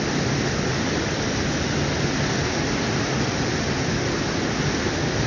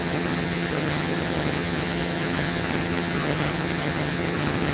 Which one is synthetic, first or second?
second